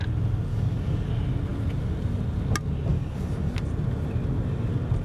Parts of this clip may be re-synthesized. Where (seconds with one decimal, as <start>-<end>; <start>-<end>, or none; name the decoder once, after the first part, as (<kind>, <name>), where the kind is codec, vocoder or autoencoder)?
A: 0.5-1.1 (codec, DAC); 2.9-3.5